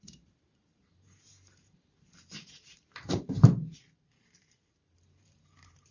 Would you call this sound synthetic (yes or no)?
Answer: yes